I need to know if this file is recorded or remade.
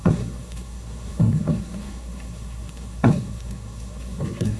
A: remade